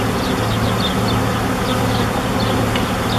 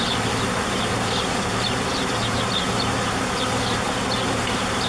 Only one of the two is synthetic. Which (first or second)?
second